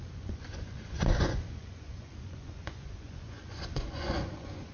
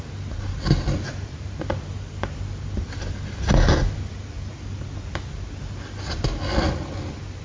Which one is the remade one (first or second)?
first